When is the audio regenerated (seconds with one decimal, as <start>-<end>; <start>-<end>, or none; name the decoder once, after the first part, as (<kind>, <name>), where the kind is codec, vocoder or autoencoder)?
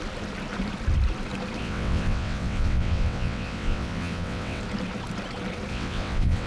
1.6-4.6 (vocoder, WaveNeXt); 5.7-6.5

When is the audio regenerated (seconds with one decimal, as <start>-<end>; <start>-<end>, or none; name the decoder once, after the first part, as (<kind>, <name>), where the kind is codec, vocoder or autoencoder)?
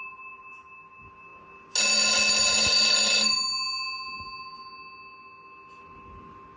none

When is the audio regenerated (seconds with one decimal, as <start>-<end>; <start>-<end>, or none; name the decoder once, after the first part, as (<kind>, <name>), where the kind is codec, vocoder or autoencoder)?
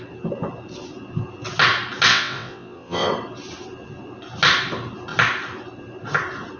2.1-3.1 (vocoder, WaveNeXt)